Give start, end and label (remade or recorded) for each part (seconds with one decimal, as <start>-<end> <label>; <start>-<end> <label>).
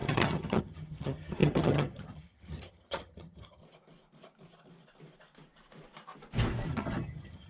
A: 0.0-3.6 remade; 3.6-6.7 recorded; 6.7-7.5 remade